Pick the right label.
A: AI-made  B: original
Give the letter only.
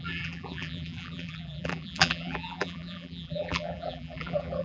A